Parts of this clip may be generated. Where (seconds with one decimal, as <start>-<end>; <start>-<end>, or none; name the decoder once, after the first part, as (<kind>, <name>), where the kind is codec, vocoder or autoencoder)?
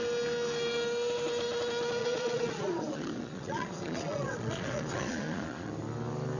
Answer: 2.0-5.7 (vocoder, Vocos)